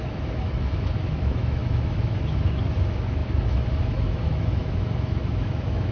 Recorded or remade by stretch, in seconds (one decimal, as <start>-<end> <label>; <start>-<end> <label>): 0.0-5.9 remade